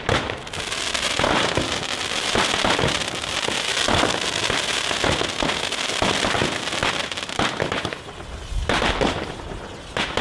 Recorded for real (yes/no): no